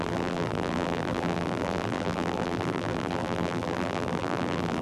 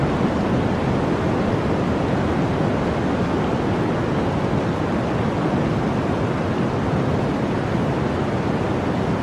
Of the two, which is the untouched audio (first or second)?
second